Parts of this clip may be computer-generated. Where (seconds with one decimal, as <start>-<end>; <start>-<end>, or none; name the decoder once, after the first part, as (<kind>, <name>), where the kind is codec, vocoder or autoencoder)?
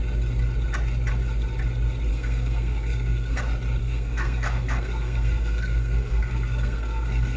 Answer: 2.1-3.4 (codec, SNAC); 3.8-7.4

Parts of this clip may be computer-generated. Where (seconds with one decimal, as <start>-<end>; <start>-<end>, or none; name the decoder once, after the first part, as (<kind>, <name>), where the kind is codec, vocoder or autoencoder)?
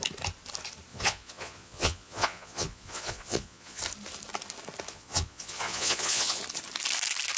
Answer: 0.9-3.8 (vocoder, Vocos); 4.9-6.4